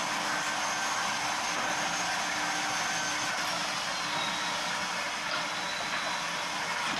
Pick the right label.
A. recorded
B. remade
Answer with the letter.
A